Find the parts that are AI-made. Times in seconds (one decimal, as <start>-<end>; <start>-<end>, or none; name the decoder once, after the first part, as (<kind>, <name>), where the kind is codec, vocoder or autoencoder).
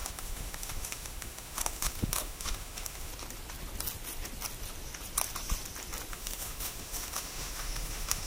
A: 0.0-3.1 (autoencoder, DAC-VAE); 6.1-8.3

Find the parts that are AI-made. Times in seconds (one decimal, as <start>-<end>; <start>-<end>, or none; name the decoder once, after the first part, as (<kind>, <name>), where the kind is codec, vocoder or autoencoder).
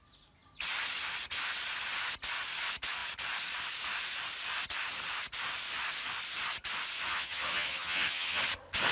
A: 7.1-8.4 (vocoder, HiFi-GAN)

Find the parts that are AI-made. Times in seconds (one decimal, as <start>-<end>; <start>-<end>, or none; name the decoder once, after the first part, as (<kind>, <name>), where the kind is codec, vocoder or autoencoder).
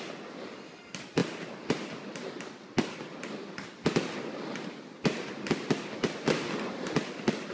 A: none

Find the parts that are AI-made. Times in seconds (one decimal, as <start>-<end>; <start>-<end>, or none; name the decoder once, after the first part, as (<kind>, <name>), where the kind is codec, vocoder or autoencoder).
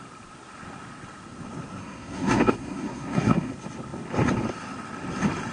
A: 1.8-3.5 (codec, SNAC)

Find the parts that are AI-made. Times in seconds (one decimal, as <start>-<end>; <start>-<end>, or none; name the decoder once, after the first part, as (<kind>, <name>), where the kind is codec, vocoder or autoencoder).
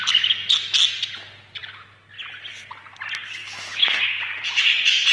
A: 3.4-4.0 (autoencoder, DAC-VAE)